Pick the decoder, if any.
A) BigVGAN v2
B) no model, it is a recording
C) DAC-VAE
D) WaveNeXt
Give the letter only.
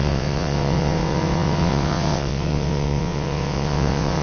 D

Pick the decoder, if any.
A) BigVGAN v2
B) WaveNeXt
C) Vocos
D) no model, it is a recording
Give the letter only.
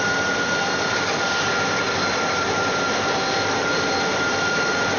A